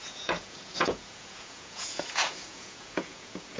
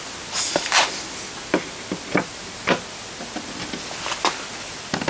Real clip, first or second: second